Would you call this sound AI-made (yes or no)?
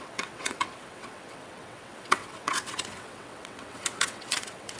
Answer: yes